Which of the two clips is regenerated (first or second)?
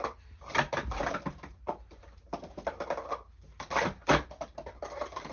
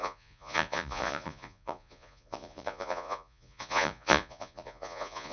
second